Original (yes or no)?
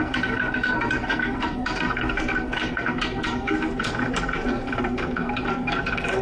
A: no